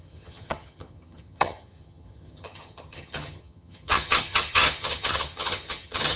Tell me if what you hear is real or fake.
fake